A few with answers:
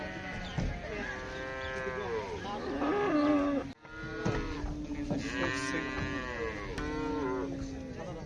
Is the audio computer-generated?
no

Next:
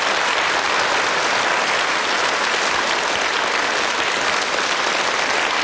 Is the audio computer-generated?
no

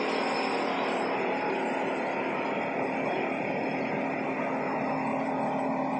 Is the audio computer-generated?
no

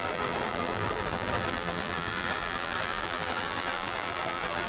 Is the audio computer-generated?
yes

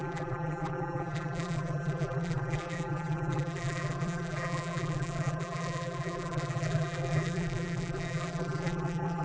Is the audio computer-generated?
yes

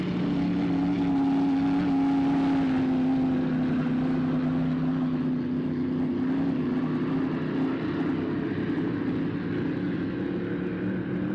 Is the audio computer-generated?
no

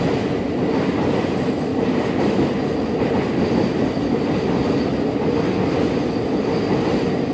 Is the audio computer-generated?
no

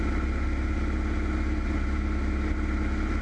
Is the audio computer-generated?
no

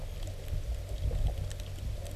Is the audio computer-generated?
no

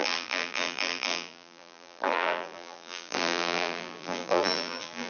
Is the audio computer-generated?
yes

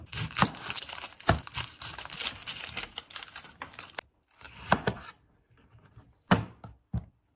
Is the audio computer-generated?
no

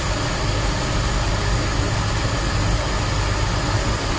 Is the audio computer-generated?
no